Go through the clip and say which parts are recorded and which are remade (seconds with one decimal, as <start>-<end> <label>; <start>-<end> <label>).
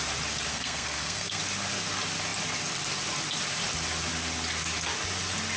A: 0.0-0.5 recorded; 0.5-1.4 remade; 1.4-5.6 recorded